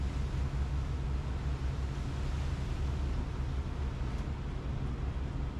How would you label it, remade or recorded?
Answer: recorded